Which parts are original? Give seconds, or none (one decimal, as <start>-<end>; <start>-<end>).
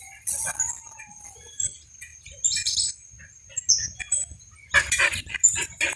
0.0-6.0